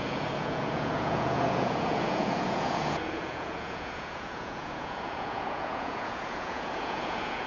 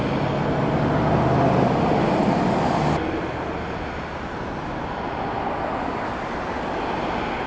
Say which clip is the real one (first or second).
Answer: second